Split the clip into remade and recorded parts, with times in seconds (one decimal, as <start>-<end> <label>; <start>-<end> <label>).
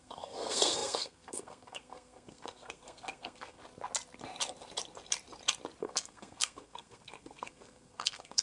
0.0-3.6 remade; 3.6-5.8 recorded; 5.8-8.4 remade